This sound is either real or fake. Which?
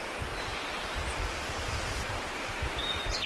real